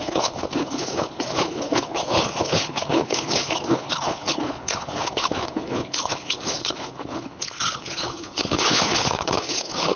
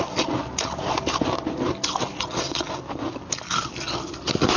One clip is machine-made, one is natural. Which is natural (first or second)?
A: second